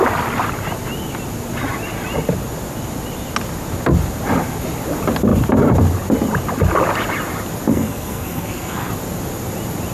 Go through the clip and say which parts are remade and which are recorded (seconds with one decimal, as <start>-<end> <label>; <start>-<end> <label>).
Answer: 0.0-7.7 recorded; 7.7-8.9 remade; 8.9-9.9 recorded